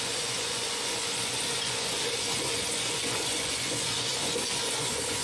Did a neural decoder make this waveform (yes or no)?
yes